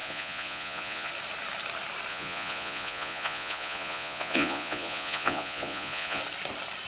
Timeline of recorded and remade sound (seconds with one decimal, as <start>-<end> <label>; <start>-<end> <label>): 0.0-1.1 remade; 1.1-2.1 recorded; 2.1-6.2 remade; 6.2-6.9 recorded